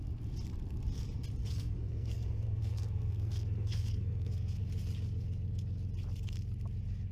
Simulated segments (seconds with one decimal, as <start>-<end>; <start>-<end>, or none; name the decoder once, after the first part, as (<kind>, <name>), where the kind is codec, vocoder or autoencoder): 1.4-4.6 (codec, SNAC)

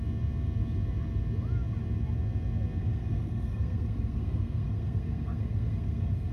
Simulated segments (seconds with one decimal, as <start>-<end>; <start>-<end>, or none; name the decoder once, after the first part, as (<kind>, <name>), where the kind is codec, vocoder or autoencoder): 2.8-6.3 (codec, SNAC)

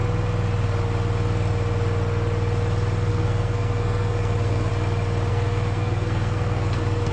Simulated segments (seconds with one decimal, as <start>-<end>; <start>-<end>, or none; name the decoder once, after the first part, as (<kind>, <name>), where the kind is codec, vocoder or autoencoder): 3.1-4.7 (codec, SNAC); 5.3-7.1

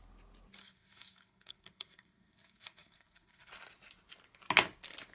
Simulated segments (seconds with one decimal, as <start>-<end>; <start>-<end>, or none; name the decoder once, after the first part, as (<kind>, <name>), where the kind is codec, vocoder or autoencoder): 0.6-3.5 (codec, SNAC)

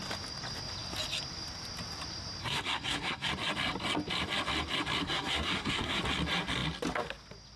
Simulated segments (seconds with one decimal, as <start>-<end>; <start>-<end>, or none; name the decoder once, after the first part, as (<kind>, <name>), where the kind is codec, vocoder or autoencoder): 2.4-3.3 (codec, SNAC); 5.0-6.0

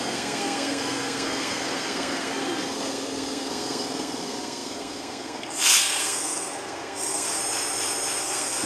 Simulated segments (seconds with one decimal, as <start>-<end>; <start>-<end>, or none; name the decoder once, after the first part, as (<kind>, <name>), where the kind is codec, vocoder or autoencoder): 0.0-7.4 (codec, SNAC); 8.2-8.7